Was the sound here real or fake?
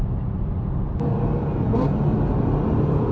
real